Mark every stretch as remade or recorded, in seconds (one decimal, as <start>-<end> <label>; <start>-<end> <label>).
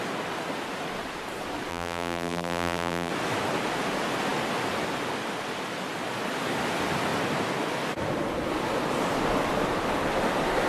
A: 0.0-1.7 recorded; 1.7-3.1 remade; 3.1-10.7 recorded